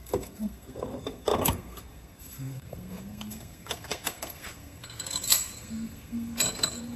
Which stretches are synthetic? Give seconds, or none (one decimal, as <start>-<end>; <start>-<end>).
0.0-7.0

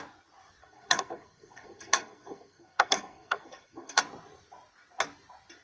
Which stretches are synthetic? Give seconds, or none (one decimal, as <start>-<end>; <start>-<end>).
0.6-4.0

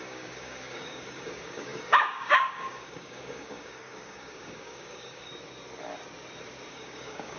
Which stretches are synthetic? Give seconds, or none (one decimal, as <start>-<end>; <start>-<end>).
0.0-5.3; 6.7-7.4

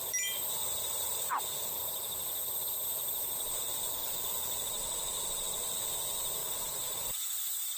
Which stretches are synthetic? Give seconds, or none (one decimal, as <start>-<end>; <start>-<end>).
0.6-1.4; 6.4-7.8

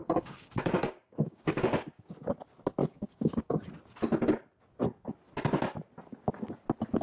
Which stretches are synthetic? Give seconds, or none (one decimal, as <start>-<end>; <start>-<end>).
0.0-2.1; 2.8-3.7